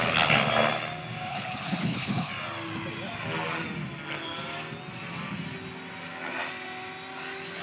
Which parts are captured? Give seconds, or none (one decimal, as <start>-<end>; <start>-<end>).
0.0-1.3; 2.3-7.6